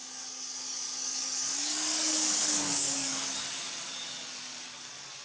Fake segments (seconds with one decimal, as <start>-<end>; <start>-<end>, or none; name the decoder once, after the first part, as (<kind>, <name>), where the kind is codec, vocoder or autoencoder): 0.0-5.2 (codec, DAC)

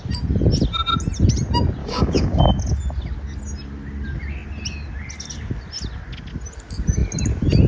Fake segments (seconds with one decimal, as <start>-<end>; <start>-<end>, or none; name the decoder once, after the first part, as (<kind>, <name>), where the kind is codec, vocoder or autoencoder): 1.8-2.4 (codec, DAC)

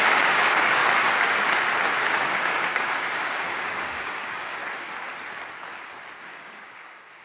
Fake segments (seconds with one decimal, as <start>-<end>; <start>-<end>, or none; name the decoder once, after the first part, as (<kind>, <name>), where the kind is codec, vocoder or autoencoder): 0.0-0.8 (codec, DAC); 2.0-4.6; 6.2-7.2